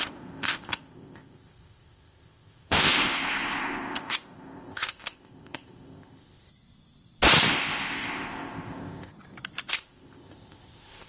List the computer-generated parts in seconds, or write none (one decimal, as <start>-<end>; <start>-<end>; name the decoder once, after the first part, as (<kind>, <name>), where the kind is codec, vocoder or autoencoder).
0.0-6.5 (codec, ZipCodec); 7.5-9.1; 9.7-11.1